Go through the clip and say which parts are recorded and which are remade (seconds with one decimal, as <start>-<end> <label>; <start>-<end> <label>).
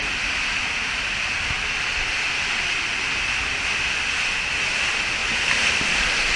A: 0.0-5.2 recorded; 5.2-5.7 remade; 5.7-6.4 recorded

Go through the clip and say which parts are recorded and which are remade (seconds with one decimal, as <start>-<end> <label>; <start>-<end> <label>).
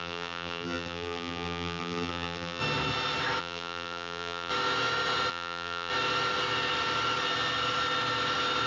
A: 0.0-2.6 remade; 2.6-3.4 recorded; 3.4-4.5 remade; 4.5-5.3 recorded; 5.3-5.9 remade; 5.9-8.7 recorded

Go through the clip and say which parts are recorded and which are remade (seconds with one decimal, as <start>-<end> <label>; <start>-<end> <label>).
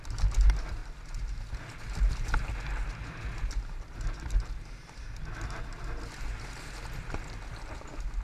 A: 0.0-0.8 recorded; 0.8-1.4 remade; 1.4-8.2 recorded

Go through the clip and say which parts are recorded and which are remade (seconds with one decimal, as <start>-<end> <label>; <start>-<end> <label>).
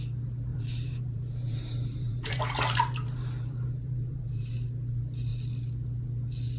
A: 0.0-0.5 recorded; 0.5-4.5 remade; 4.5-6.6 recorded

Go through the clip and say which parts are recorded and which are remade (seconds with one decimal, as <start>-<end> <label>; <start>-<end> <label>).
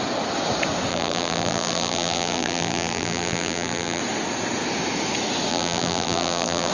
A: 0.0-0.9 recorded; 0.9-4.0 remade; 4.0-5.5 recorded; 5.5-6.7 remade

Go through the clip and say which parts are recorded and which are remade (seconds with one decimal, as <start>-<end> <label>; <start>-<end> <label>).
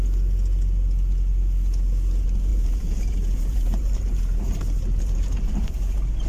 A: 0.0-2.5 recorded; 2.5-6.3 remade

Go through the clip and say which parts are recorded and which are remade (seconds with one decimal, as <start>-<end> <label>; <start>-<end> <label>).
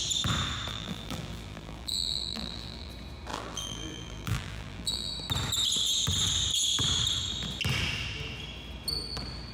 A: 0.0-0.7 recorded; 0.7-2.9 remade; 2.9-3.3 recorded; 3.3-5.1 remade; 5.1-9.5 recorded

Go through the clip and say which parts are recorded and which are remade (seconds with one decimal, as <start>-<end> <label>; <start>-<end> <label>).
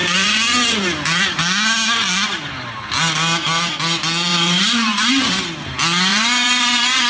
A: 0.0-1.4 remade; 1.4-4.3 recorded; 4.3-5.1 remade; 5.1-6.1 recorded; 6.1-7.1 remade